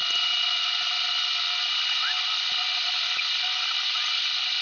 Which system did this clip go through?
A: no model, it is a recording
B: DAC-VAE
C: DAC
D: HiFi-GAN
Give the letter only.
A